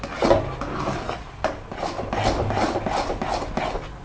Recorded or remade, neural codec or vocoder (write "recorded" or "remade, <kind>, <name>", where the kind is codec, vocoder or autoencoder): recorded